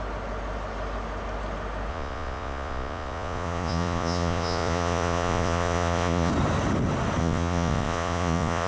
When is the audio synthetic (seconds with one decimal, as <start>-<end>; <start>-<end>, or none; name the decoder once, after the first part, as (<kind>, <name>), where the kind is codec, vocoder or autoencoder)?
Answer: 1.9-6.3 (vocoder, Vocos); 7.2-8.7